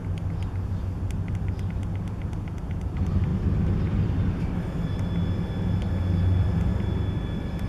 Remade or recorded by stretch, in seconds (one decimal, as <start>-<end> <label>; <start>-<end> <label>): 0.0-7.7 recorded